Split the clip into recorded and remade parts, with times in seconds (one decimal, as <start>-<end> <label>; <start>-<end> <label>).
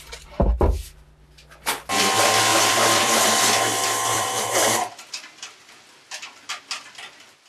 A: 0.0-2.5 recorded; 2.5-5.8 remade; 5.8-7.5 recorded